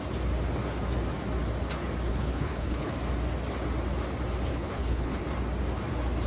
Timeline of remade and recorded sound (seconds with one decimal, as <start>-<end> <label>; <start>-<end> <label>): 0.0-2.1 recorded; 2.1-2.9 remade; 2.9-4.5 recorded; 4.5-5.2 remade; 5.2-6.3 recorded